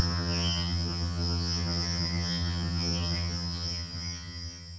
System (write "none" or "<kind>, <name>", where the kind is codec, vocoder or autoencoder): vocoder, HiFi-GAN